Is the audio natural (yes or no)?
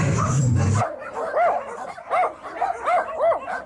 yes